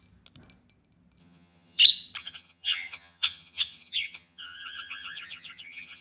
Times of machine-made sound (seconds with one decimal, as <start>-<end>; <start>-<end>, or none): 1.2-1.8; 2.2-6.0